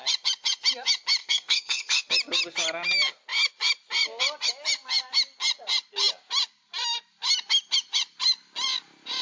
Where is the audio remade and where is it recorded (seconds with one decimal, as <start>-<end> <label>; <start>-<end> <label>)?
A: 0.0-1.2 recorded; 1.2-2.0 remade; 2.0-9.2 recorded